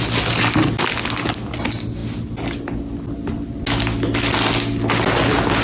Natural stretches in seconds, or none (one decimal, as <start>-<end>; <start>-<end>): 0.0-5.6